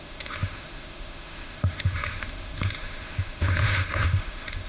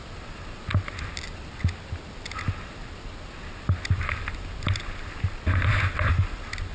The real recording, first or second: second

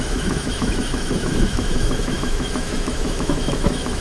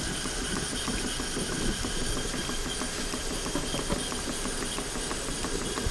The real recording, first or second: second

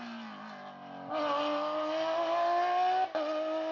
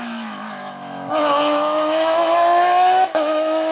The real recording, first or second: first